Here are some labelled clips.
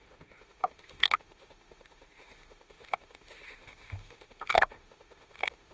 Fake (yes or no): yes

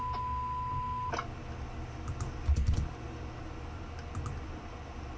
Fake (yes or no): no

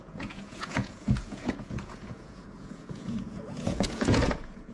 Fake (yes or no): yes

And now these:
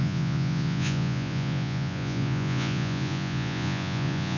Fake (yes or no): yes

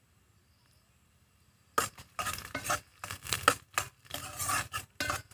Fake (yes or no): no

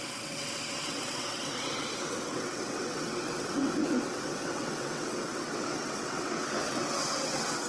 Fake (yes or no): yes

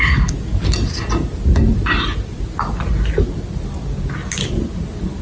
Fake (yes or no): no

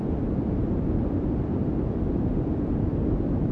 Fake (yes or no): no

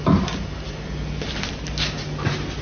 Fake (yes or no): no